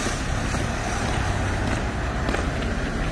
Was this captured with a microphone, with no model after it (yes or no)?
yes